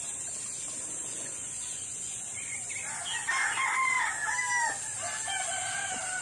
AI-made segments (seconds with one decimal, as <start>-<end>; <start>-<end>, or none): 1.0-2.7